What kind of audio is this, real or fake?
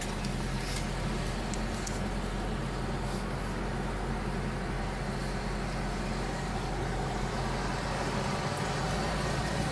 real